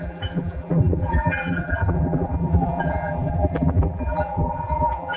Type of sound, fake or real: fake